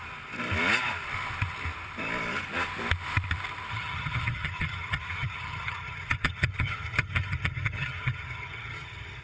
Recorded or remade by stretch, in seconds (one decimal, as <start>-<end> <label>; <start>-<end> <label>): 0.0-3.7 recorded; 3.7-9.2 remade